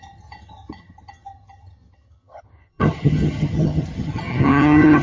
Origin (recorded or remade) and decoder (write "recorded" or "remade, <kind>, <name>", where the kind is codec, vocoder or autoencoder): remade, vocoder, HiFi-GAN